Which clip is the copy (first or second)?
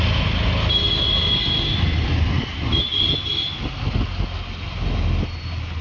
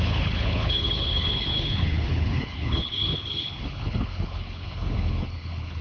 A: second